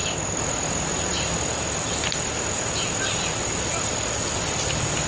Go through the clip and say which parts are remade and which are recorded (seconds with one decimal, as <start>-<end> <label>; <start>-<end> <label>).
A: 0.0-5.1 recorded